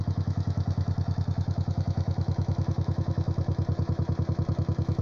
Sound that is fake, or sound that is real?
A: fake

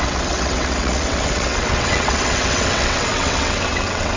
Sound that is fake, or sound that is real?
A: fake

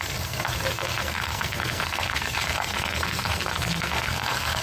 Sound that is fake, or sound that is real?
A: fake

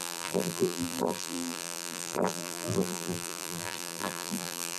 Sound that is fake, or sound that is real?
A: fake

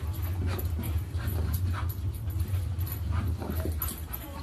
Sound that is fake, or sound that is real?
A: real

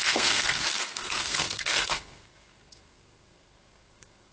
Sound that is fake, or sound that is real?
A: fake